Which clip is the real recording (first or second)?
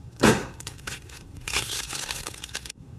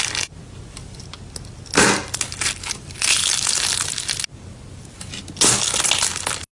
second